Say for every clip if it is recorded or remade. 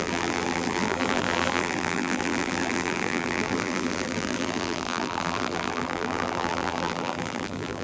remade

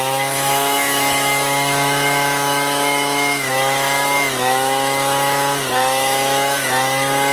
remade